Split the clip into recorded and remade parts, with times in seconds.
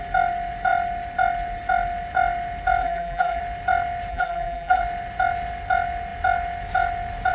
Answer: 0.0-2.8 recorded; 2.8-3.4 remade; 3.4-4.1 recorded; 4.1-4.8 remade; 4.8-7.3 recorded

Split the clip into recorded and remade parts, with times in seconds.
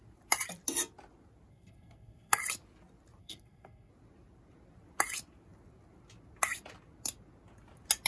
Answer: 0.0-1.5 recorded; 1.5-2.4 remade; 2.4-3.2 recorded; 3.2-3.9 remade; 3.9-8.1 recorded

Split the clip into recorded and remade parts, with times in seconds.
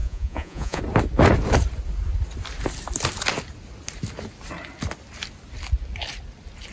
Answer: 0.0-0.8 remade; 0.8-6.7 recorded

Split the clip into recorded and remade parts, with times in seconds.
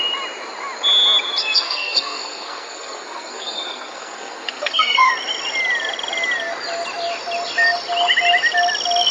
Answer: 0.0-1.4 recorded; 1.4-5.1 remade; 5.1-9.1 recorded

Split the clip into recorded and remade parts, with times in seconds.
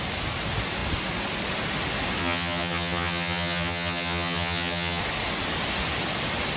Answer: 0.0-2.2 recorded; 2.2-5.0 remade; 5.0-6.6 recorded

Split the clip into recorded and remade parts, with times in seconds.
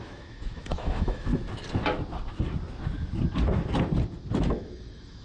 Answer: 0.0-1.3 remade; 1.3-4.4 recorded; 4.4-5.2 remade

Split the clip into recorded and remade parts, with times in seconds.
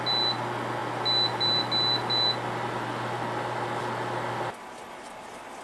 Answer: 0.0-5.6 recorded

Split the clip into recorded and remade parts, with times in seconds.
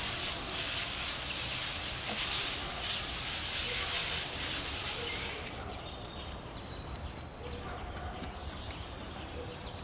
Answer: 0.0-4.0 recorded; 4.0-6.1 remade; 6.1-8.4 recorded; 8.4-9.8 remade